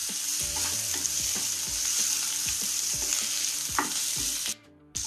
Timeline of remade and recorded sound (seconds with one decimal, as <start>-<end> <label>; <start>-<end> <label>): 0.0-3.1 remade; 3.1-5.1 recorded